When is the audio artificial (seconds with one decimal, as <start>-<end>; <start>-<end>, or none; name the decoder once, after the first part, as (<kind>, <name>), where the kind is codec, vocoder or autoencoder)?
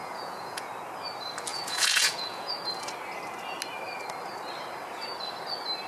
0.0-0.7 (vocoder, Vocos); 1.5-2.5